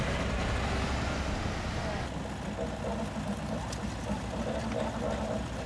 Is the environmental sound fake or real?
real